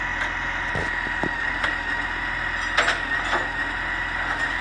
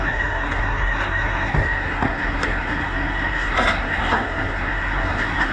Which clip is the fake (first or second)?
second